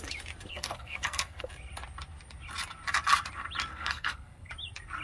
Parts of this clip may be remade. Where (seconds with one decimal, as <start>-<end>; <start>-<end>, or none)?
0.5-1.5; 3.7-4.5